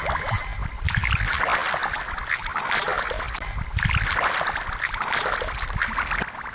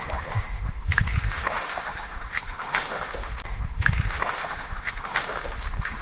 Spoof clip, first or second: second